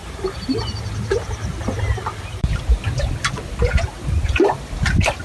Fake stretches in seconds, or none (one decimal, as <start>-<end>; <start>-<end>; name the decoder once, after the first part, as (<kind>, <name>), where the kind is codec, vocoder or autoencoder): 0.0-3.1 (vocoder, BigVGAN v2)